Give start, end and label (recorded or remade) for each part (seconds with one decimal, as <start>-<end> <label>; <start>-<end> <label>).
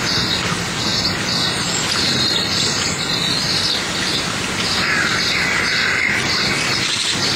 0.0-0.9 recorded; 0.9-5.3 remade; 5.3-7.4 recorded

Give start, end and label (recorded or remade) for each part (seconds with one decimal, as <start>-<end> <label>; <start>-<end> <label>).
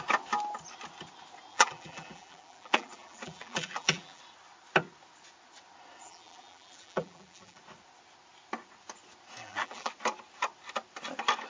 0.0-1.5 recorded; 1.5-4.2 remade; 4.2-6.0 recorded; 6.0-7.6 remade; 7.6-9.4 recorded; 9.4-9.9 remade; 9.9-11.5 recorded